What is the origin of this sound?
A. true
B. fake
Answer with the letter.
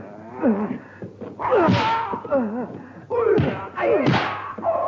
A